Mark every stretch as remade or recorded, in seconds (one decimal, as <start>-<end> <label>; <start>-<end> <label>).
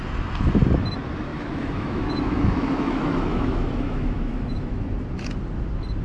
0.0-1.3 recorded; 1.3-4.9 remade; 4.9-6.0 recorded